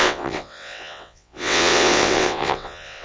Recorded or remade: remade